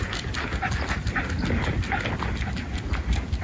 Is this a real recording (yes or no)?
yes